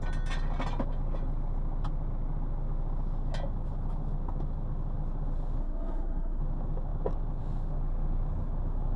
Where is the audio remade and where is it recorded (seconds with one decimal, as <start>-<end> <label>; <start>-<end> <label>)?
0.0-5.6 recorded; 5.6-6.4 remade; 6.4-9.0 recorded